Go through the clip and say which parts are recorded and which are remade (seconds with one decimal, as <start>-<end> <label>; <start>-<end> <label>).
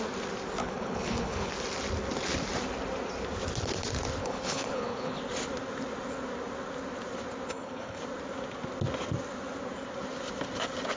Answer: 0.0-0.6 recorded; 0.6-1.5 remade; 1.5-4.2 recorded; 4.2-5.2 remade; 5.2-7.5 recorded; 7.5-8.0 remade; 8.0-11.0 recorded